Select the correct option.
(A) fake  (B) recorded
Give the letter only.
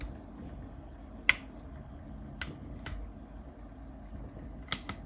B